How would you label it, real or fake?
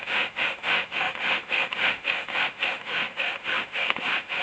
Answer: fake